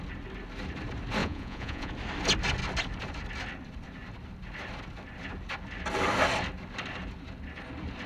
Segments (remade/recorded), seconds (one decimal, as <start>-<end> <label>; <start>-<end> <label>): 0.0-1.2 recorded; 1.2-1.9 remade; 1.9-8.1 recorded